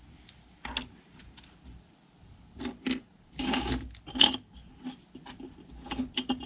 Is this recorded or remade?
recorded